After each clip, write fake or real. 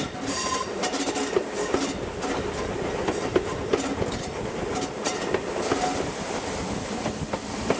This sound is real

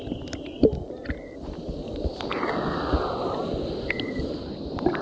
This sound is real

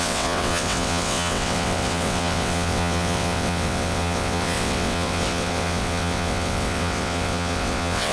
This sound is fake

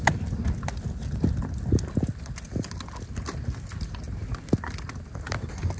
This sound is real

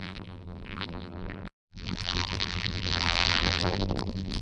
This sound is fake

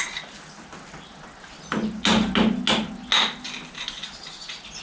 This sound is real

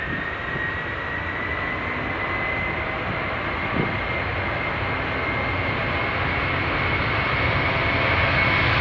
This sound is real